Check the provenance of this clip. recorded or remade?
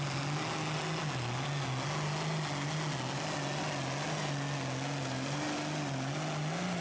recorded